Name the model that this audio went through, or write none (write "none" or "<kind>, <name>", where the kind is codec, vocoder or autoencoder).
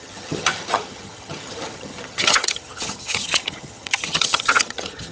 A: vocoder, HiFi-GAN